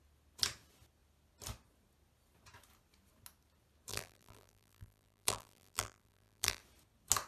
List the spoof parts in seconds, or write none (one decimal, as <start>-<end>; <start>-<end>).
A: 3.9-6.6